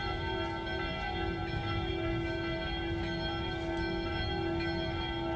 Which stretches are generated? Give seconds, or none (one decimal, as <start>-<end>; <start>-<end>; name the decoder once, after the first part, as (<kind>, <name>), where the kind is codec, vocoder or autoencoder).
none